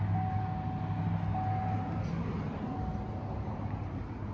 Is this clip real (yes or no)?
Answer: yes